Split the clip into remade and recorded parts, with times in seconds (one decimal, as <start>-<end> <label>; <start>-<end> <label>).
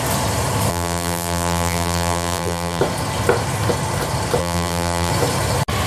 0.0-0.7 recorded; 0.7-2.8 remade; 2.8-4.4 recorded; 4.4-5.1 remade; 5.1-5.9 recorded